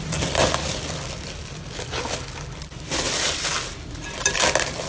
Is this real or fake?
real